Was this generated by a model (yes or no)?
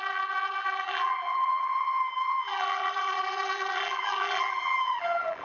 yes